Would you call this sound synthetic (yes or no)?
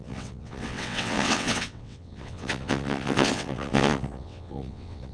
yes